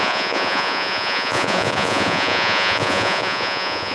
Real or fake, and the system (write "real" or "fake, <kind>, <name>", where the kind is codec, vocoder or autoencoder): fake, vocoder, Vocos